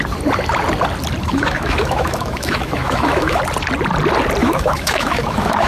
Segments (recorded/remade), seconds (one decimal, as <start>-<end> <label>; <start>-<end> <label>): 0.0-1.2 recorded; 1.2-3.4 remade; 3.4-4.4 recorded; 4.4-5.7 remade